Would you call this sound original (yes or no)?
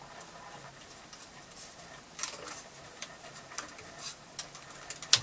yes